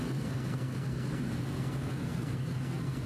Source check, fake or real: fake